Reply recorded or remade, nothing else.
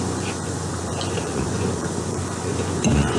remade